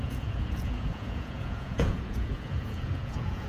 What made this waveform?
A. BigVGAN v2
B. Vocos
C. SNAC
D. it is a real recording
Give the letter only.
B